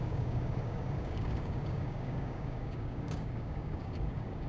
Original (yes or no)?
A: no